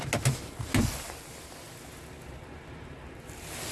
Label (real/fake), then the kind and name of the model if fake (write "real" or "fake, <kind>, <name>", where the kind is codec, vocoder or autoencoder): real